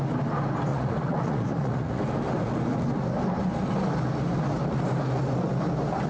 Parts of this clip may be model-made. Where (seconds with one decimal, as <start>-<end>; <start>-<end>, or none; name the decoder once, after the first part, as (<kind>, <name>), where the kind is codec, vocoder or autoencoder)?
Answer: 0.7-2.0 (vocoder, Vocos)